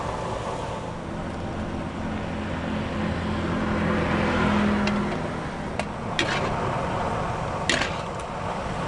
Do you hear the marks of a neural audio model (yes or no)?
no